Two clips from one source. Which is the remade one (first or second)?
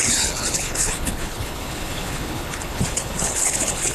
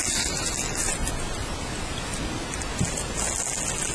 first